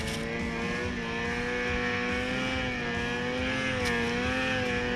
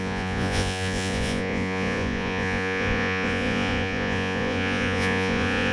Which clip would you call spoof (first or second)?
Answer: second